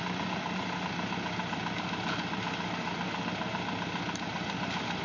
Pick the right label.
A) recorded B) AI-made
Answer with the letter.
A